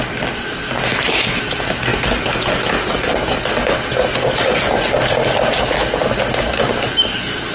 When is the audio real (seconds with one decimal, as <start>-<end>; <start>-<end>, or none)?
0.0-7.5